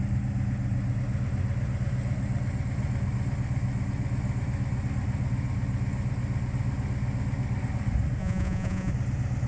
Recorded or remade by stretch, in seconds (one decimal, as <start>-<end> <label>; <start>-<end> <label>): 0.0-8.2 recorded; 8.2-8.9 remade; 8.9-9.5 recorded